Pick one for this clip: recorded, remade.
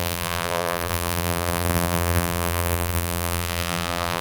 remade